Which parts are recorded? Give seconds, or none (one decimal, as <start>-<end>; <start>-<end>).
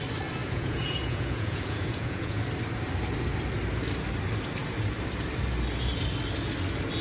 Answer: 0.0-0.4; 2.4-7.0